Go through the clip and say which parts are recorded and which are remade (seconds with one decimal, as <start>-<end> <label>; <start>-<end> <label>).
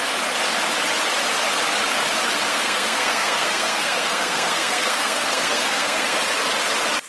0.0-2.5 recorded; 2.5-6.2 remade; 6.2-7.1 recorded